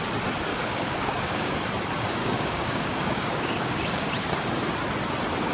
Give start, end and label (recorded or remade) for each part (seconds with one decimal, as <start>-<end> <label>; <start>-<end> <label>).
0.0-0.5 recorded; 0.5-1.5 remade; 1.5-2.2 recorded; 2.2-4.1 remade; 4.1-5.5 recorded